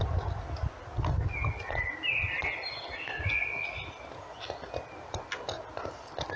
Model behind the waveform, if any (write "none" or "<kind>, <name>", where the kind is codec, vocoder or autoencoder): none